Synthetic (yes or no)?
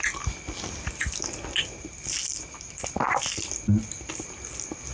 no